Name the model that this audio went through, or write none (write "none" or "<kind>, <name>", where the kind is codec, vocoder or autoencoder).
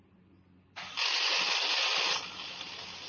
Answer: none